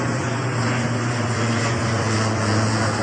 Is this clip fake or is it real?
fake